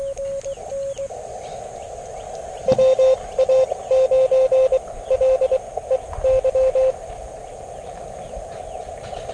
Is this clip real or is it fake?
real